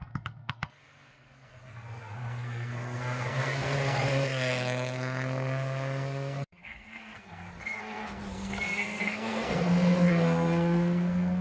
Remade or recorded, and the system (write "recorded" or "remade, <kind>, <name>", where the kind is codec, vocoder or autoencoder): remade, codec, SNAC